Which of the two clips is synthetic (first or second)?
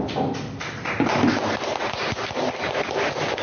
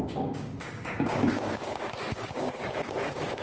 second